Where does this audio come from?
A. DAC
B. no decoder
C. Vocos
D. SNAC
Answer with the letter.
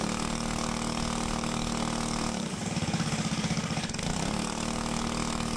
A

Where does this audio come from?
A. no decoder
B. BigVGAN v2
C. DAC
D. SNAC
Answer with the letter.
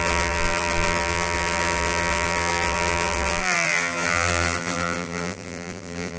B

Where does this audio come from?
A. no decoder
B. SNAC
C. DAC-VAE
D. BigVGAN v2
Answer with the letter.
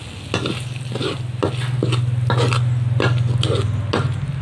A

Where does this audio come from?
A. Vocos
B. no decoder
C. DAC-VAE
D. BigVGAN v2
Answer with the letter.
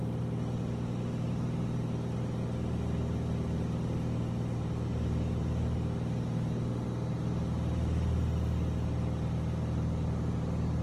B